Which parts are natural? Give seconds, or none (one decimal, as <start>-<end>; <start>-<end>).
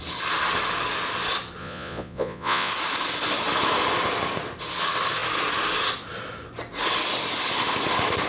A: 0.0-1.6; 2.7-8.3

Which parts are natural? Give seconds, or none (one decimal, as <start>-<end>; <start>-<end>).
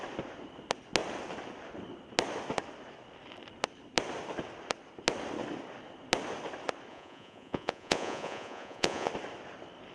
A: 0.0-6.9; 9.1-9.9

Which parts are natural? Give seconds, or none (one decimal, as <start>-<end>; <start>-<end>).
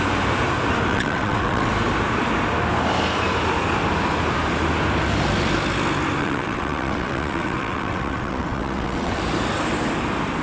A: 0.0-0.9; 1.7-6.2; 9.2-10.4